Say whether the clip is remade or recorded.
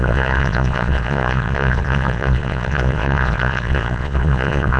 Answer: remade